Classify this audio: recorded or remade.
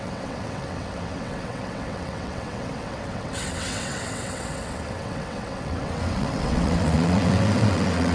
remade